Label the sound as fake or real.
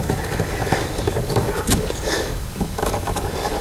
fake